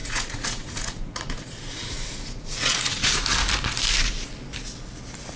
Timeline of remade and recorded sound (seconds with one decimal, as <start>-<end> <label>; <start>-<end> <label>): 0.0-3.1 remade; 3.1-5.4 recorded